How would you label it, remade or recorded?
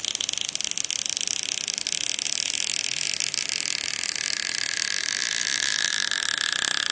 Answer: recorded